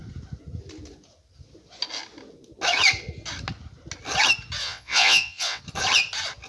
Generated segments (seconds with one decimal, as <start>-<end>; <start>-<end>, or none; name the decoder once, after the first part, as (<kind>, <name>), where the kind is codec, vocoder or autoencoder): 4.6-5.6 (vocoder, WaveNeXt)